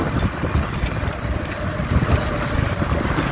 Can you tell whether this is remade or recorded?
recorded